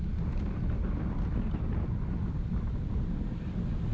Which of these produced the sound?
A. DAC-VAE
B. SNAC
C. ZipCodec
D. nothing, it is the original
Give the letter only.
D